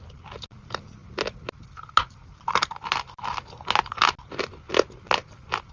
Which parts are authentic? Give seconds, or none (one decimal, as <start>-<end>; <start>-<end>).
0.0-5.7